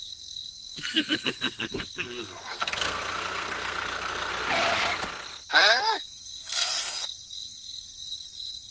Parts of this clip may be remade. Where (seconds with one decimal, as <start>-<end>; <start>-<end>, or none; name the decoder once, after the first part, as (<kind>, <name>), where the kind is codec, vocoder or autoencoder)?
0.0-4.3 (codec, SNAC); 5.5-8.7